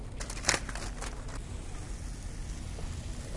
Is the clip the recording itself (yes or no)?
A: yes